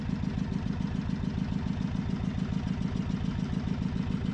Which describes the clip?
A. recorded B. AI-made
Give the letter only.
A